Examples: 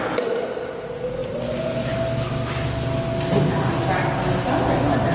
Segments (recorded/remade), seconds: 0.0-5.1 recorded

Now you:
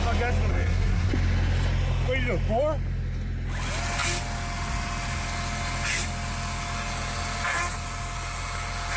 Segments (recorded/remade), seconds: 0.0-0.5 recorded; 0.5-1.1 remade; 1.1-9.0 recorded

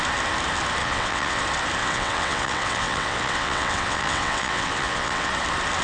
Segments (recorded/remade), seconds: 0.0-0.8 recorded; 0.8-1.4 remade; 1.4-1.8 recorded; 1.8-5.3 remade; 5.3-5.8 recorded

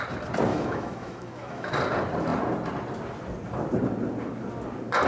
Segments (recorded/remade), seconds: 0.0-0.5 recorded; 0.5-1.7 remade; 1.7-5.1 recorded

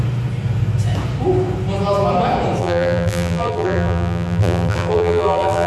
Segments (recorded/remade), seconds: 0.0-2.6 recorded; 2.6-5.7 remade

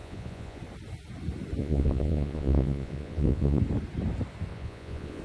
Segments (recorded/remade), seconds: 0.0-0.6 remade; 0.6-1.6 recorded; 1.6-3.6 remade; 3.6-4.5 recorded; 4.5-5.2 remade